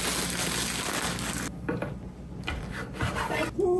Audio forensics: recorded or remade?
recorded